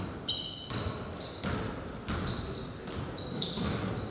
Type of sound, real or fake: real